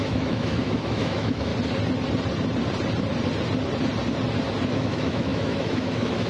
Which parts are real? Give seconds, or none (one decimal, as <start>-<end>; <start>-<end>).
1.5-4.7